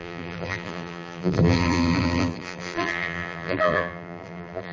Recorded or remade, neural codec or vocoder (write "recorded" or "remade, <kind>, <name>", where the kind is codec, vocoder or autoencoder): remade, vocoder, BigVGAN v2